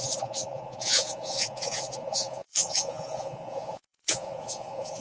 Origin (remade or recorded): remade